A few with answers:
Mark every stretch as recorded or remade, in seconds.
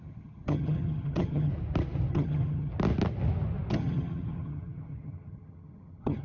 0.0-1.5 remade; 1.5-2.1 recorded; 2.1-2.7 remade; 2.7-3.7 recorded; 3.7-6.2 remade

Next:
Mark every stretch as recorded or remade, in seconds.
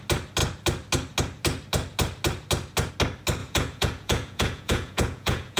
0.0-3.4 recorded; 3.4-5.6 remade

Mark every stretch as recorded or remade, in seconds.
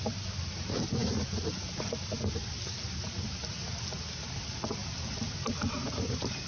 0.0-6.5 recorded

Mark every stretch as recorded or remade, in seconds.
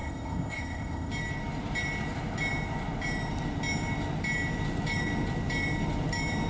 0.0-1.1 remade; 1.1-6.5 recorded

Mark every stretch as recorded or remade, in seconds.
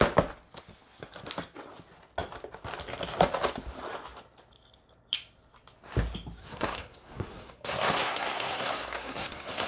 0.0-6.4 recorded; 6.4-9.7 remade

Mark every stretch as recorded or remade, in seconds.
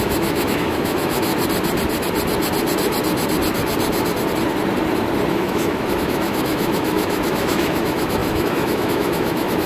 0.0-1.3 remade; 1.3-5.3 recorded; 5.3-9.7 remade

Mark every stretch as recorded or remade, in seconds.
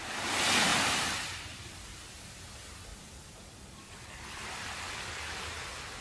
0.0-0.7 recorded; 0.7-1.7 remade; 1.7-2.9 recorded; 2.9-3.9 remade; 3.9-4.4 recorded; 4.4-5.4 remade; 5.4-6.0 recorded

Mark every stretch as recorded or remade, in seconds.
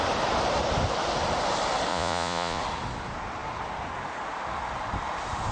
0.0-1.9 recorded; 1.9-2.6 remade; 2.6-5.5 recorded